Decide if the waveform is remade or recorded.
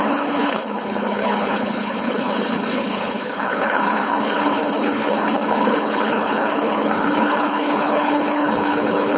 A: remade